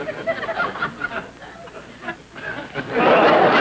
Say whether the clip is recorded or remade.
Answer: recorded